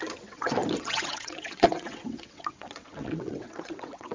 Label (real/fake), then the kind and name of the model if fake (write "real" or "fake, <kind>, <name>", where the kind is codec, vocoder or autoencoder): fake, vocoder, WaveNeXt